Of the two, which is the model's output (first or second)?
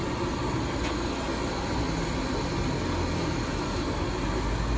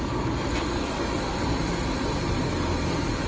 second